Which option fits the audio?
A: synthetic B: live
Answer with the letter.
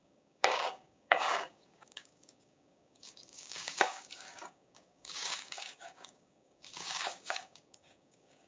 A